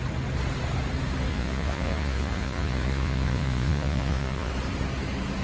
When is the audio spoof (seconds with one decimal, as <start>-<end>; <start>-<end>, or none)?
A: 1.3-4.5